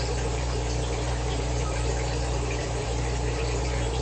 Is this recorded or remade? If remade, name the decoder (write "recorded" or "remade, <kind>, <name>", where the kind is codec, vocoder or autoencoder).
remade, vocoder, BigVGAN v2